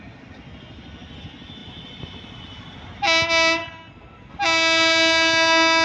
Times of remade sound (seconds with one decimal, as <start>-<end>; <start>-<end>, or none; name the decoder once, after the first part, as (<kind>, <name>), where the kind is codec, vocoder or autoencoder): 3.6-4.3 (codec, SNAC)